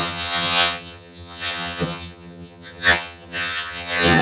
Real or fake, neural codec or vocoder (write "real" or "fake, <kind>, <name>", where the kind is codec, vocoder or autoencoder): fake, vocoder, HiFi-GAN